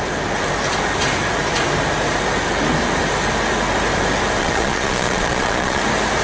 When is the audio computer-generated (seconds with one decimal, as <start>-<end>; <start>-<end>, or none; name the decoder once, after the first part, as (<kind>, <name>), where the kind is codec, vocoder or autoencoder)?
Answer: 4.4-5.8 (vocoder, Vocos)